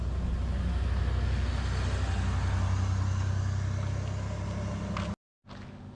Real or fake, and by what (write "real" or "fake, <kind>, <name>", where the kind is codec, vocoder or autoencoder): real